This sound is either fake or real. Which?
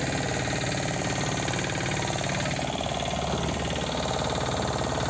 real